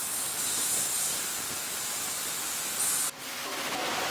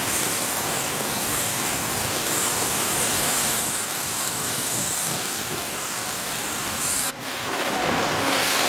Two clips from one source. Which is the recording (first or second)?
first